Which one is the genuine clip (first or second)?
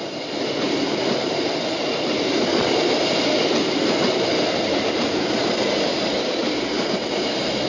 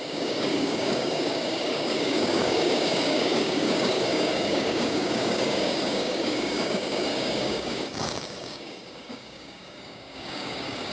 first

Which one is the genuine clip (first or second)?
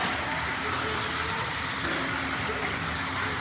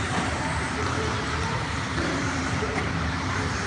first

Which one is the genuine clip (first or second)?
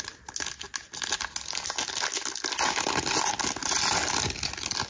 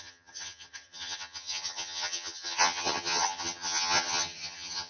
first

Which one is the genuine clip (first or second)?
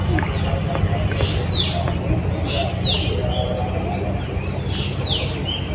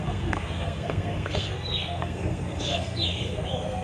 first